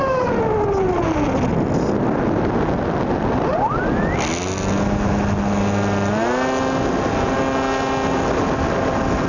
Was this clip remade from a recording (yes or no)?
no